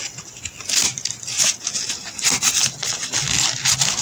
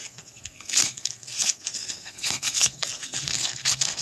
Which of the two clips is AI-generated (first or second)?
second